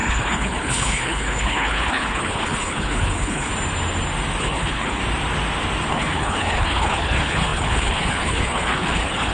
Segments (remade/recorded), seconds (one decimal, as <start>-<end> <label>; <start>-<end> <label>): 0.0-3.5 remade; 3.5-4.4 recorded; 4.4-5.0 remade; 5.0-5.9 recorded; 5.9-9.3 remade